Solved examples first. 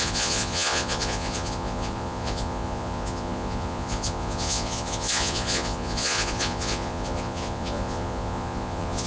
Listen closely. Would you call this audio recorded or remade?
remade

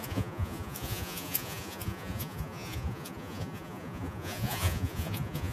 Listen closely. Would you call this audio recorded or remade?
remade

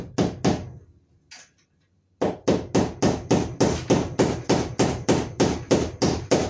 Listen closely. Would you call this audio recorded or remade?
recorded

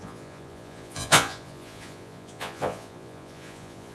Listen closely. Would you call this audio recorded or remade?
remade